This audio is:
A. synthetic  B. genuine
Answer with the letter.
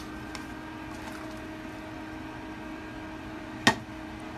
B